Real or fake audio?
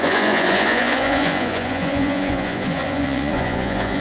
fake